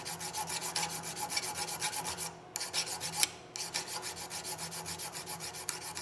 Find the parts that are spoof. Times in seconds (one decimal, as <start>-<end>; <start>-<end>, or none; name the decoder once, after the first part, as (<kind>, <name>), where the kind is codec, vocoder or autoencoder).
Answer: none